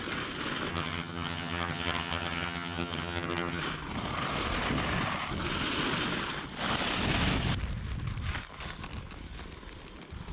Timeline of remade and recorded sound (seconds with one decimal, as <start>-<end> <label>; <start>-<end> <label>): 0.0-0.7 recorded; 0.7-3.6 remade; 3.6-10.3 recorded